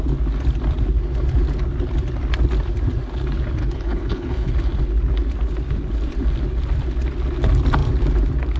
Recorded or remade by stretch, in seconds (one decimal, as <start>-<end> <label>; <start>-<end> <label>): 0.0-3.6 recorded; 3.6-4.5 remade; 4.5-8.6 recorded